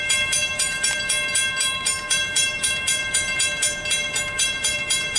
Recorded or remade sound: remade